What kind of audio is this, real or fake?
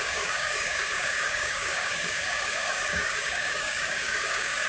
fake